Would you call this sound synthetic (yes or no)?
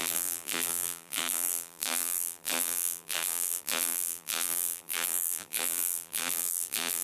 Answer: yes